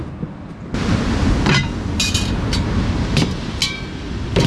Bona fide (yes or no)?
yes